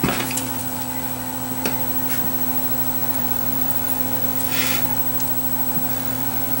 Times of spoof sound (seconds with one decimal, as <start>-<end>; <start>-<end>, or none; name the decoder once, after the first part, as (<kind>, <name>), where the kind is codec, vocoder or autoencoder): 0.0-0.6 (vocoder, Vocos); 3.0-5.0; 5.9-6.6